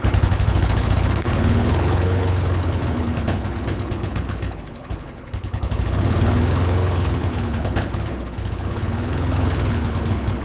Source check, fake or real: fake